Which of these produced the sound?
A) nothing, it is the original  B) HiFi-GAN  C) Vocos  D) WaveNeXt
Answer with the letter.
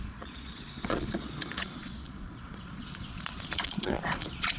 C